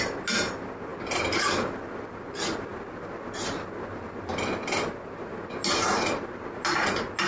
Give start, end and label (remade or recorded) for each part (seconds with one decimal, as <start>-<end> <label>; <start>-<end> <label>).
0.0-7.3 recorded